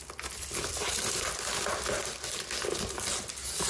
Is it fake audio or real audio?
real